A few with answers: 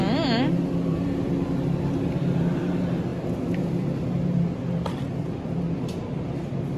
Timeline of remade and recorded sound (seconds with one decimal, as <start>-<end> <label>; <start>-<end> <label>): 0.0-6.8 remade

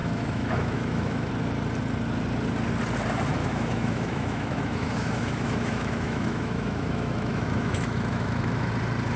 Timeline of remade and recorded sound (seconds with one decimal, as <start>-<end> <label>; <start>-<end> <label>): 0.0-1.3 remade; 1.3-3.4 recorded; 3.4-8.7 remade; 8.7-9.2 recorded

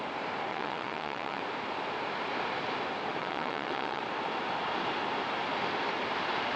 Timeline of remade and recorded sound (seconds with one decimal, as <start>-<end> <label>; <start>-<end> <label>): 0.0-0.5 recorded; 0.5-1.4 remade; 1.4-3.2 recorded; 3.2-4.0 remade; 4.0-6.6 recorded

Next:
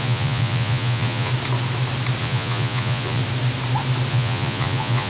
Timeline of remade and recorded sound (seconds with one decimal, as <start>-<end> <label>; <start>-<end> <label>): 0.0-1.3 remade; 1.3-2.2 recorded; 2.2-3.2 remade; 3.2-4.1 recorded; 4.1-5.1 remade